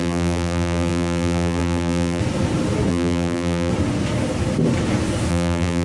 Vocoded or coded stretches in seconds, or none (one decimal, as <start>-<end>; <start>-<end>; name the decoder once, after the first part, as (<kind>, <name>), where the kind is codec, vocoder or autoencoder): 0.0-2.2 (vocoder, BigVGAN v2); 2.9-3.7; 5.3-5.8